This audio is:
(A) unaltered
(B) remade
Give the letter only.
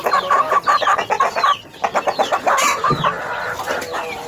A